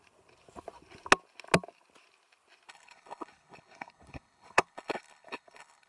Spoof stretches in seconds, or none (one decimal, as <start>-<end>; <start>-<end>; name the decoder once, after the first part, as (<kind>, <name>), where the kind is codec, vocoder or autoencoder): 2.7-5.9 (codec, HILCodec)